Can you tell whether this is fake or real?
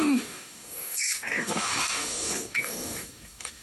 fake